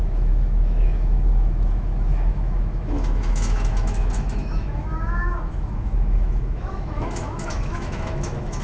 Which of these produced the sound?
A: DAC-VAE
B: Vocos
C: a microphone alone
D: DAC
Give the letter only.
A